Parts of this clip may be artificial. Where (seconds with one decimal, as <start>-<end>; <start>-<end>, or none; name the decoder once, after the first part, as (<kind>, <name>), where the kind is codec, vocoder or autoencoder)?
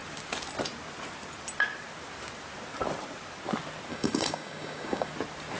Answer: 3.9-5.1 (codec, DAC)